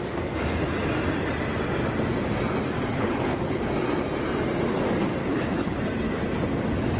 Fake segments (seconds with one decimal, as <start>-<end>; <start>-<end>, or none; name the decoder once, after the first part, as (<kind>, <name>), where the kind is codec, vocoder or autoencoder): 2.9-3.7 (codec, HILCodec); 5.2-5.8